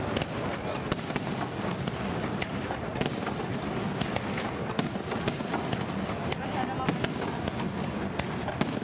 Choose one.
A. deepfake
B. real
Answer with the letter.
B